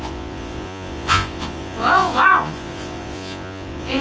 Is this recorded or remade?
remade